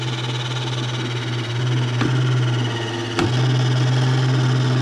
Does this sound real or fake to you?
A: real